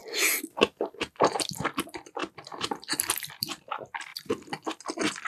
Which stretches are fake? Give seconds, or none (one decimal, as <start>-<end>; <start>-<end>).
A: 1.0-5.3

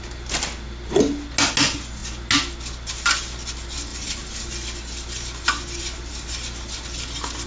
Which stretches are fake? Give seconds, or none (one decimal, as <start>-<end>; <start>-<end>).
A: 3.9-4.4